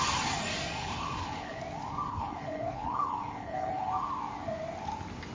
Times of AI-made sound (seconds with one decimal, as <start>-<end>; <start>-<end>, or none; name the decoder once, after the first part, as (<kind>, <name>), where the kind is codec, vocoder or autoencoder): 0.8-1.6 (codec, HILCodec); 2.1-3.9